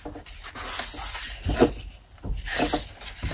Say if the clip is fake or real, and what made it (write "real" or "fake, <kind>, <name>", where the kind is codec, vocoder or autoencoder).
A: real